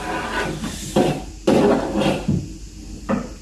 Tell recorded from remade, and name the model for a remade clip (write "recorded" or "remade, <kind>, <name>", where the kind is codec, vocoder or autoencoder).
recorded